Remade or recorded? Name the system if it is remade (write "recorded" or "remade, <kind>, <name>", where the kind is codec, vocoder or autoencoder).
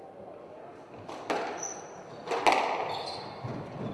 recorded